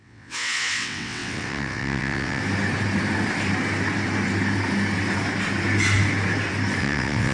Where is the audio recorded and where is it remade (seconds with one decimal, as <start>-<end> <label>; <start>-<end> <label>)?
0.0-2.4 remade; 2.4-6.8 recorded; 6.8-7.3 remade